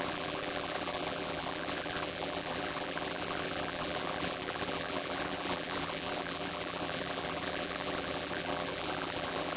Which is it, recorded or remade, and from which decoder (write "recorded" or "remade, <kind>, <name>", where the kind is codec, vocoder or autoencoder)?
remade, vocoder, BigVGAN v2